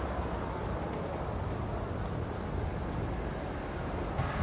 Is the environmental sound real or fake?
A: real